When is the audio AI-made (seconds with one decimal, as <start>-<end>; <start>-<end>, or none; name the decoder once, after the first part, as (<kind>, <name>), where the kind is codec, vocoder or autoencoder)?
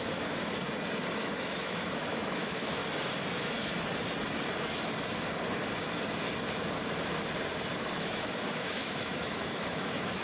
0.0-0.6 (autoencoder, DAC-VAE); 1.2-2.8; 8.0-10.2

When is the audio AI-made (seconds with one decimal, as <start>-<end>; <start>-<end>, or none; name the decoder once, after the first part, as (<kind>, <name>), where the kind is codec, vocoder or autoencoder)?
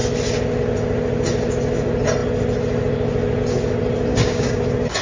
4.1-4.6 (codec, DAC)